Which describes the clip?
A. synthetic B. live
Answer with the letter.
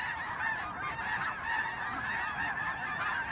B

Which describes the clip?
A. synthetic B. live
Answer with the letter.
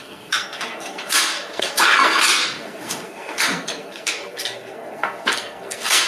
A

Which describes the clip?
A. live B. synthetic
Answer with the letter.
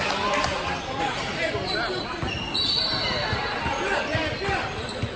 A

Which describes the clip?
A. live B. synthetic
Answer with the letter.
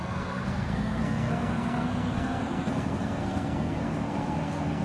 B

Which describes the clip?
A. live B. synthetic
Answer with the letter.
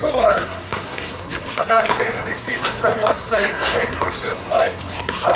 B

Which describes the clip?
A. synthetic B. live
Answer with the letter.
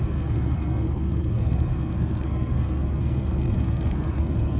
A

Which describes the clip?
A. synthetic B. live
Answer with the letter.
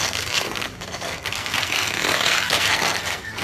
A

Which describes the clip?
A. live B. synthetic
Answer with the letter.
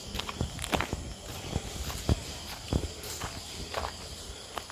A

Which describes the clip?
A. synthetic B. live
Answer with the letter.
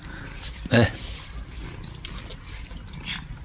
B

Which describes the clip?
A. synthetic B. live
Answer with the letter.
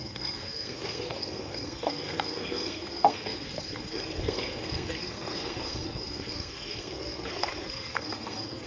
A